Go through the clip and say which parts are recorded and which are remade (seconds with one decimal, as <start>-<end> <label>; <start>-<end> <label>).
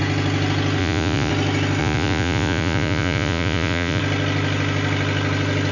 0.0-0.8 recorded; 0.8-1.3 remade; 1.3-1.8 recorded; 1.8-4.0 remade; 4.0-5.7 recorded